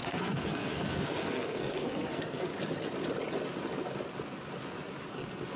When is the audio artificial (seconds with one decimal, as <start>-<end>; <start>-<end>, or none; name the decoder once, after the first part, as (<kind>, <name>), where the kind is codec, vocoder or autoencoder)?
0.0-2.5 (codec, SNAC); 5.1-5.6